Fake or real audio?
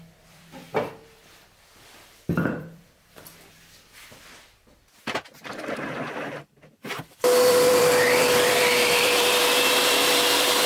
fake